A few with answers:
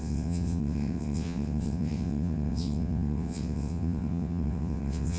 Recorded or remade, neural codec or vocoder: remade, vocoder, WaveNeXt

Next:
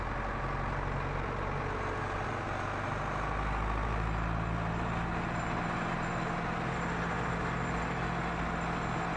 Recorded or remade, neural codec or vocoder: recorded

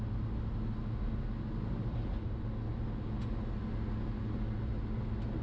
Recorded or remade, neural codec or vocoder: recorded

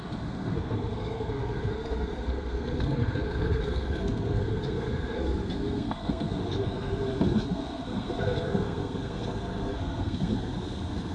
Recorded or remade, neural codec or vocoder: remade, codec, SNAC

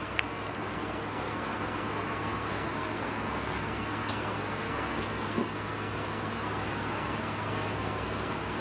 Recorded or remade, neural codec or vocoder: remade, codec, SNAC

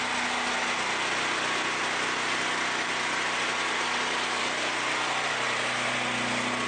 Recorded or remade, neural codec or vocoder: recorded